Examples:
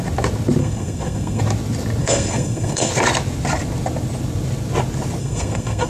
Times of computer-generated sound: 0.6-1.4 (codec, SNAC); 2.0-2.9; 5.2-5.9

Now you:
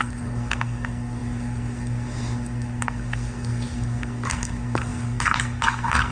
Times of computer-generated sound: 0.0-6.1 (codec, SNAC)

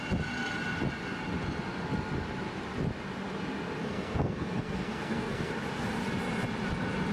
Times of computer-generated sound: 3.8-5.5 (codec, SNAC)

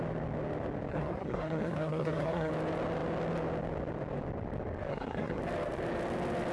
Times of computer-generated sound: 0.9-2.5 (codec, SNAC); 4.9-5.4